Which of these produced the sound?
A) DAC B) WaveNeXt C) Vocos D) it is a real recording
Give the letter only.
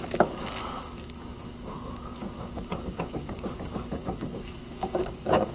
A